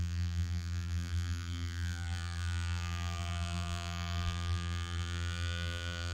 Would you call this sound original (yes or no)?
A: no